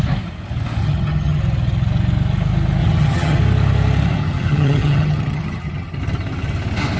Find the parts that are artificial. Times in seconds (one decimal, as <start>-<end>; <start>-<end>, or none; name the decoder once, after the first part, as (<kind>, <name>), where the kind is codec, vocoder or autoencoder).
0.8-1.4 (vocoder, HiFi-GAN); 2.8-3.4; 4.2-6.0